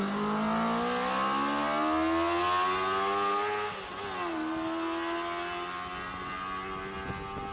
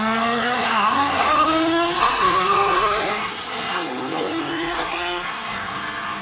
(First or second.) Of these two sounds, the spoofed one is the second